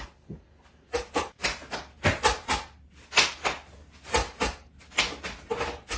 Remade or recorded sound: recorded